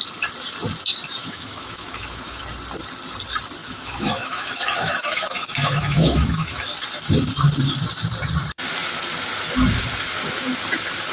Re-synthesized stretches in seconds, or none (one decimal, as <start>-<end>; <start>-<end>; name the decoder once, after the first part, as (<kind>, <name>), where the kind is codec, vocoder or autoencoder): 1.2-2.4 (autoencoder, DAC-VAE); 3.6-6.7